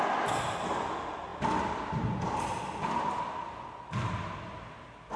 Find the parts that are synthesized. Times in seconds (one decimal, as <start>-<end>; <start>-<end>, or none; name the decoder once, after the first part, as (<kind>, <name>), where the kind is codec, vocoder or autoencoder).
none